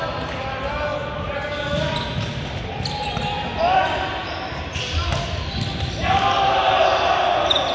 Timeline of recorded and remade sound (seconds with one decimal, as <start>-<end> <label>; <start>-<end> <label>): 0.0-7.7 recorded